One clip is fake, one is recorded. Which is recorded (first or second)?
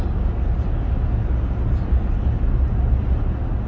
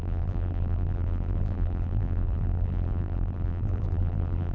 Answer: first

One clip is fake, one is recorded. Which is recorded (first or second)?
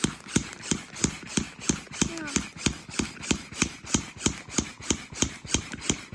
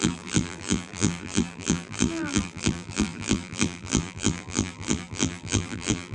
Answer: first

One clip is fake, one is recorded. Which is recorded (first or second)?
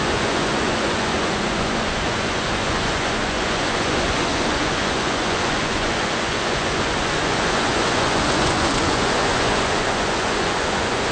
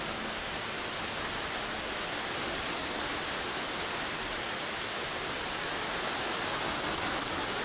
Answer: second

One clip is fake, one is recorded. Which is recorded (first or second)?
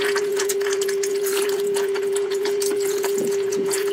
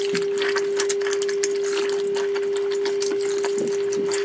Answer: second